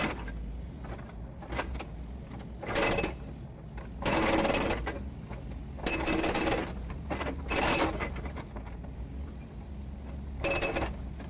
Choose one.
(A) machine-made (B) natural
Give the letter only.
B